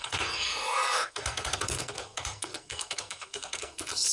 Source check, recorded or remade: remade